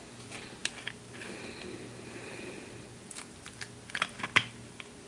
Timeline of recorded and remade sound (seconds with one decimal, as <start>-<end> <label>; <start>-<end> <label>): 0.0-5.1 recorded